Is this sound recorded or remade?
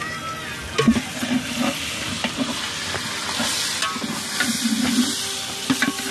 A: recorded